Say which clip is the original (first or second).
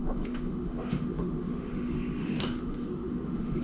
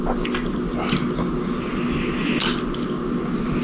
second